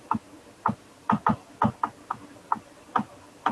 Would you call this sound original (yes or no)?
yes